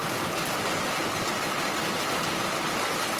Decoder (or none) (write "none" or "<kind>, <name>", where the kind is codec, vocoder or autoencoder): none